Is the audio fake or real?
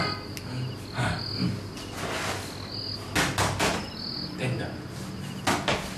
real